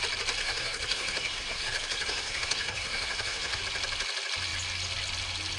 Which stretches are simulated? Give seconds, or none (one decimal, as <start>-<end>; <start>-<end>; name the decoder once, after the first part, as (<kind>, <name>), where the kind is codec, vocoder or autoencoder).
0.4-3.6 (codec, SNAC)